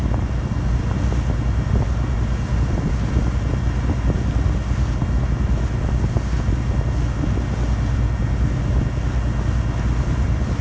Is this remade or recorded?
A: recorded